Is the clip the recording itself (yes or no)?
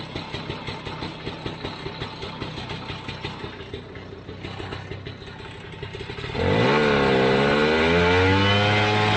yes